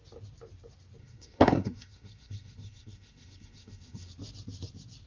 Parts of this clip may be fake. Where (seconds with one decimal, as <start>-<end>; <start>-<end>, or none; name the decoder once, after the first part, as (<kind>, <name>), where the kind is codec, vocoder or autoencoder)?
1.0-4.1 (codec, SNAC)